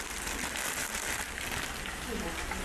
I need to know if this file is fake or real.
real